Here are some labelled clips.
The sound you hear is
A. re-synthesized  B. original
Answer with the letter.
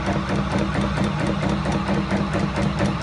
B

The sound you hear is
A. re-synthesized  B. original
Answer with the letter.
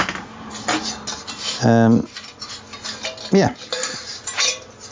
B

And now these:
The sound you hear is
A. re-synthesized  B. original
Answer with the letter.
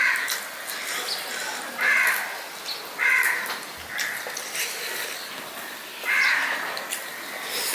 B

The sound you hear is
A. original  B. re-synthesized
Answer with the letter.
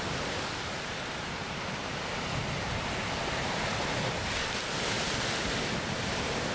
A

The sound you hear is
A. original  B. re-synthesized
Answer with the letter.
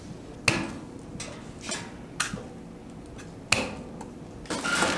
A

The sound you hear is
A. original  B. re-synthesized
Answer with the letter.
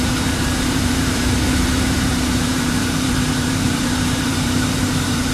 B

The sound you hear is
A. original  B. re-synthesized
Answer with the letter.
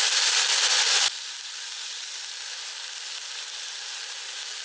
A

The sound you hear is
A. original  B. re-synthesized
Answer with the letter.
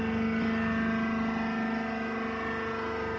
A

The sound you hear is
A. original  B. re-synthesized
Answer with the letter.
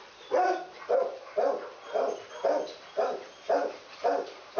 B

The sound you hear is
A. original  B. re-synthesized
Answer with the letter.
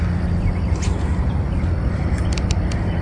A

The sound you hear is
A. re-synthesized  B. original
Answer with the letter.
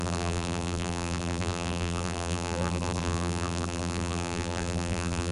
A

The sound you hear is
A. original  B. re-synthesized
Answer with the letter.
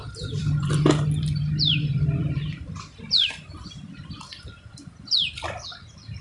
B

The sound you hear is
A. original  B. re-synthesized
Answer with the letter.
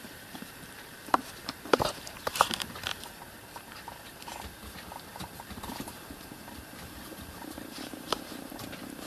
B